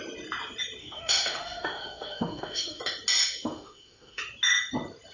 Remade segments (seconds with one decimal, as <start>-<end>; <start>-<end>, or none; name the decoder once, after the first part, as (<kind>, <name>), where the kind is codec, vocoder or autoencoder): 0.8-2.8 (autoencoder, DAC-VAE); 3.2-4.2